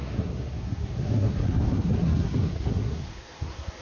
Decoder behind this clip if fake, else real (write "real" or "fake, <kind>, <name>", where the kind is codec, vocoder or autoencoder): fake, codec, SNAC